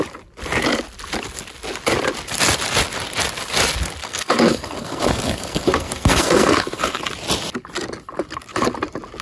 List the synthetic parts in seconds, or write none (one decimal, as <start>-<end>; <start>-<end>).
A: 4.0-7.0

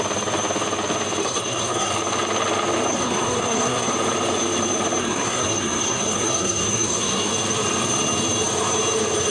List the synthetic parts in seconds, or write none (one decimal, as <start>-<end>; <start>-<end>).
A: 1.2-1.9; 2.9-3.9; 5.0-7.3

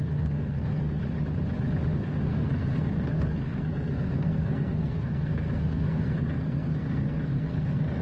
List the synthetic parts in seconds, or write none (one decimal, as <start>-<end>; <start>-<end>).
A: 0.0-1.0; 1.9-8.0

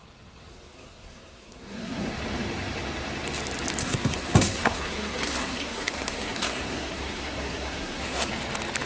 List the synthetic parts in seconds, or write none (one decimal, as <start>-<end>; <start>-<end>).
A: 0.5-2.1; 3.8-8.3

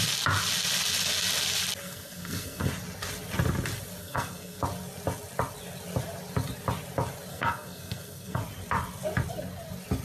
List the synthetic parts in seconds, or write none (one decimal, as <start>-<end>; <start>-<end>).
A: 1.8-2.7; 4.0-4.6; 7.3-8.4

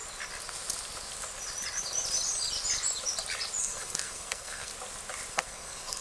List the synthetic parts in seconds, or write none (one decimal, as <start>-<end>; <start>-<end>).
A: 3.6-4.7; 5.3-6.0

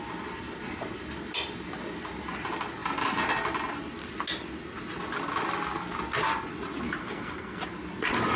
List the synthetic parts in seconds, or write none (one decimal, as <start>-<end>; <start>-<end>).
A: 7.0-7.6

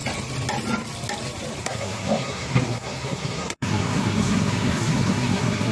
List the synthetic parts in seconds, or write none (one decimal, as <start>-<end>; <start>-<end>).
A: 1.6-5.7